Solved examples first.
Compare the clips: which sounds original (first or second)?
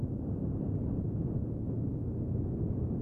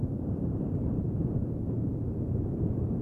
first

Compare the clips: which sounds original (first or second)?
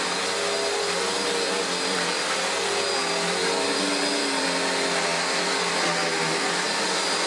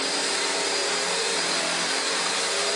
first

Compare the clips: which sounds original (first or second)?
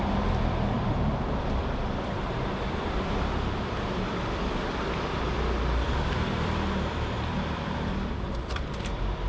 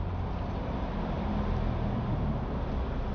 second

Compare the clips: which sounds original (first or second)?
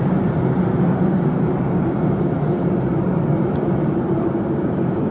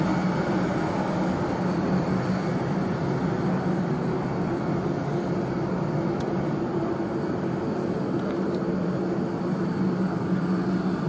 second